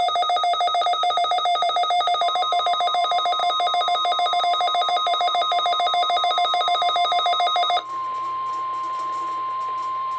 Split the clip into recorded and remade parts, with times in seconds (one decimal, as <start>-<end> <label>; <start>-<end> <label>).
0.0-3.4 remade; 3.4-4.4 recorded; 4.4-10.2 remade